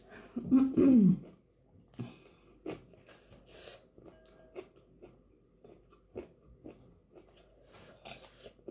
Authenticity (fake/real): real